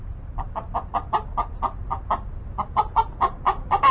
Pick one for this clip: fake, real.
real